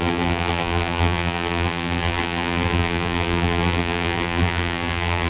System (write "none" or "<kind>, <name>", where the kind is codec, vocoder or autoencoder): vocoder, BigVGAN v2